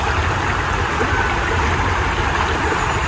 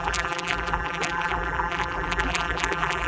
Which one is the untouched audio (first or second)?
first